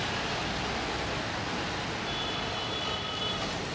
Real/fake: real